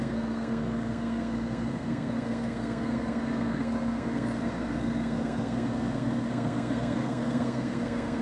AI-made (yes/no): yes